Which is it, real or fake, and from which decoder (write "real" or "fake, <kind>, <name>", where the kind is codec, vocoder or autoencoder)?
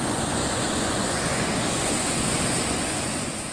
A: fake, vocoder, Vocos